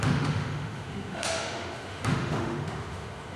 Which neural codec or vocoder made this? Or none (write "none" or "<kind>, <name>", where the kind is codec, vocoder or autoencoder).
autoencoder, DAC-VAE